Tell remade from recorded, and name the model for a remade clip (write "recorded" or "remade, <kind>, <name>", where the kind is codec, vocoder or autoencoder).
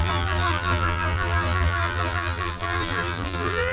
remade, vocoder, BigVGAN v2